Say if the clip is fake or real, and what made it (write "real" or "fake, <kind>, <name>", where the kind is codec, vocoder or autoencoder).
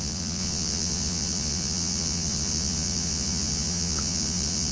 fake, vocoder, Vocos